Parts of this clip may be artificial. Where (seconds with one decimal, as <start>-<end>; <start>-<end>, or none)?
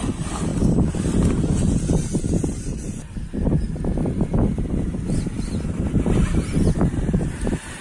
none